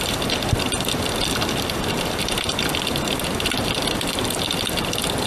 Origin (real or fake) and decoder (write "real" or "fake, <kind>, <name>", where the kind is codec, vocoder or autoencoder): fake, vocoder, BigVGAN v2